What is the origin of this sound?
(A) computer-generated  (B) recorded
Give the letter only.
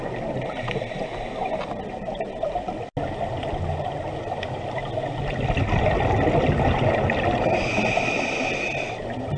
B